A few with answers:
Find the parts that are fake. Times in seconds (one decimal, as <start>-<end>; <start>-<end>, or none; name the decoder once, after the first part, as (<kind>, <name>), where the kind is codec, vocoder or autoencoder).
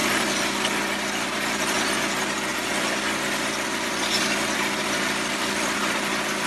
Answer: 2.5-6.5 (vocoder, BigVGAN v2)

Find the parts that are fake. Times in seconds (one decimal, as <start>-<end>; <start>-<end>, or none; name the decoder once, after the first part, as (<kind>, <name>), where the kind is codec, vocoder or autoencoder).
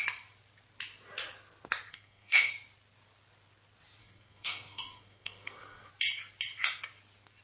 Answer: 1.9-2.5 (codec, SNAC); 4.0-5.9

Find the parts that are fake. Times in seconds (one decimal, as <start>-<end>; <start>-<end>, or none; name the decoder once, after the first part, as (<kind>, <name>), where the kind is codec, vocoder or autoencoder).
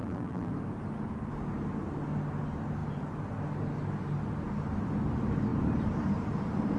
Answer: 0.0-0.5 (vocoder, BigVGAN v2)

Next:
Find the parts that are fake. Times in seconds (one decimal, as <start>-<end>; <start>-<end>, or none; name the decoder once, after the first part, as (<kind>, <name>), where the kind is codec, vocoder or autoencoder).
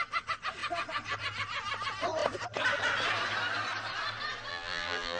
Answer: 4.5-5.2 (vocoder, BigVGAN v2)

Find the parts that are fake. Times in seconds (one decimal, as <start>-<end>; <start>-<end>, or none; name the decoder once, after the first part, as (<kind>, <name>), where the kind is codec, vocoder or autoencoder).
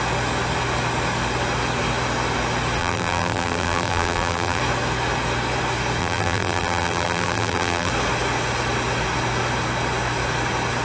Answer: 2.8-4.6 (vocoder, BigVGAN v2); 6.0-7.9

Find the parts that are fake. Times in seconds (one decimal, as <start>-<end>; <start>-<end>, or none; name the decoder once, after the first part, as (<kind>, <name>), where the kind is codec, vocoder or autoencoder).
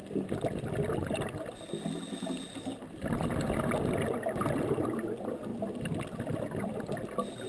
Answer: none